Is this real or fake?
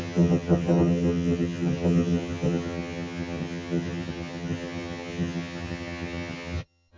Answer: fake